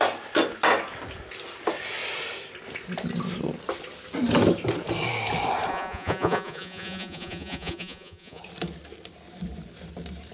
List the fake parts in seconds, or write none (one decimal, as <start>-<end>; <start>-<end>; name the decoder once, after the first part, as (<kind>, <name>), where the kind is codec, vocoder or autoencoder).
5.7-8.4 (vocoder, Vocos)